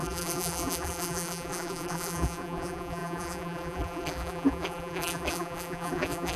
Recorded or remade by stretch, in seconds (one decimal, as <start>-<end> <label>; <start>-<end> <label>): 0.0-6.4 remade